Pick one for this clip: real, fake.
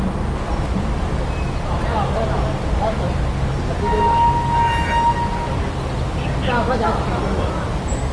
real